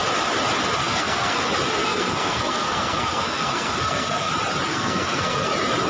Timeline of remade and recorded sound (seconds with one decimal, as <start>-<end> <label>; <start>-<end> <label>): 0.0-0.8 recorded; 0.8-1.4 remade; 1.4-1.8 recorded; 1.8-4.3 remade; 4.3-4.7 recorded; 4.7-5.5 remade; 5.5-5.9 recorded